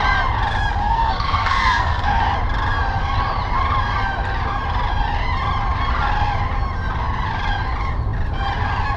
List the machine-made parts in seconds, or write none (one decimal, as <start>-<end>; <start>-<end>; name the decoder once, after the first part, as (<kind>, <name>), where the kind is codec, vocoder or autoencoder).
0.8-2.2 (codec, SNAC)